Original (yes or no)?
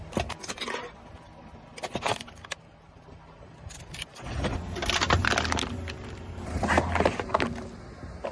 yes